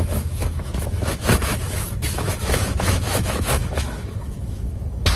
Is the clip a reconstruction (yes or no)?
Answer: yes